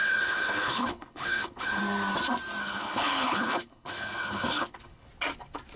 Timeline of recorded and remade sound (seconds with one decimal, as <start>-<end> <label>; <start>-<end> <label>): 0.0-1.8 remade; 1.8-2.6 recorded; 2.6-5.1 remade; 5.1-5.8 recorded